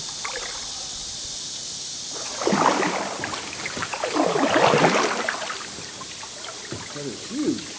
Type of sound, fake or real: real